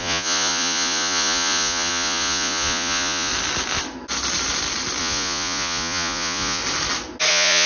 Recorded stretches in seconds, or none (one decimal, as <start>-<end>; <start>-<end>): 3.3-5.0; 6.6-7.3